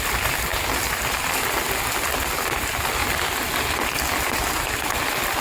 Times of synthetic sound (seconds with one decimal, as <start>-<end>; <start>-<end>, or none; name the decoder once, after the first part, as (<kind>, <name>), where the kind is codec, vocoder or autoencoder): 0.5-1.4 (vocoder, BigVGAN v2); 3.0-5.4